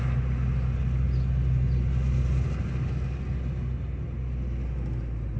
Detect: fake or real real